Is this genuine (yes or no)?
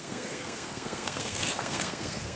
no